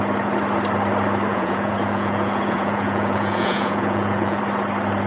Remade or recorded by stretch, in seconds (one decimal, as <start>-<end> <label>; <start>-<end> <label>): 0.0-1.3 recorded; 1.3-4.4 remade; 4.4-5.1 recorded